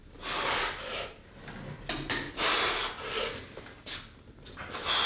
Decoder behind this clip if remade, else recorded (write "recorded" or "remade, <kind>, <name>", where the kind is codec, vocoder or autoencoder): recorded